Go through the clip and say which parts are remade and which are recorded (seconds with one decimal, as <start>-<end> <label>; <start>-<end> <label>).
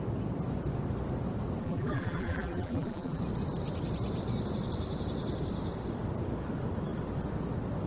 0.0-1.6 recorded; 1.6-3.2 remade; 3.2-7.9 recorded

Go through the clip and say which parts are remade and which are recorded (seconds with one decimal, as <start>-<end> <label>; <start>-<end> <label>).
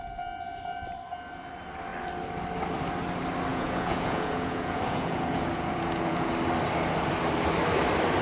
0.0-3.5 recorded; 3.5-6.3 remade; 6.3-8.2 recorded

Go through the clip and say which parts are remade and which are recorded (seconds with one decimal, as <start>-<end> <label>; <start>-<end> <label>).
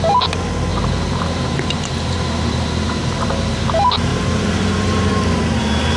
0.0-0.7 recorded; 0.7-3.0 remade; 3.0-4.1 recorded; 4.1-5.1 remade; 5.1-6.0 recorded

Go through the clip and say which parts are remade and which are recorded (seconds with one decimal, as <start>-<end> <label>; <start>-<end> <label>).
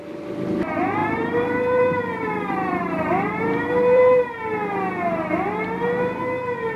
0.0-1.0 recorded; 1.0-4.0 remade; 4.0-6.8 recorded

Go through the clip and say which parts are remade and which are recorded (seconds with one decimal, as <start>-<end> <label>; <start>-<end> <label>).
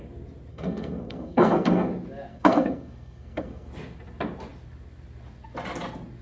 0.0-0.5 recorded; 0.5-1.9 remade; 1.9-2.3 recorded; 2.3-3.7 remade; 3.7-6.2 recorded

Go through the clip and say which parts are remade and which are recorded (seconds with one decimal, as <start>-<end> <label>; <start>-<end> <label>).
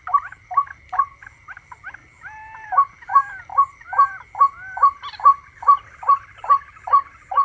0.0-7.4 recorded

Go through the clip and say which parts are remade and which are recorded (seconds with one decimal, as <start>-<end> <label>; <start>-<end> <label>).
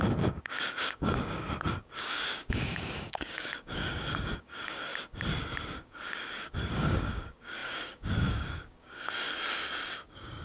0.0-4.9 remade; 4.9-5.7 recorded; 5.7-10.4 remade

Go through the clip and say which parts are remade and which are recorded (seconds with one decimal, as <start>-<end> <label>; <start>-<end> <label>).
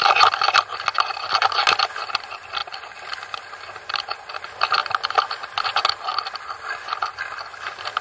0.0-8.0 recorded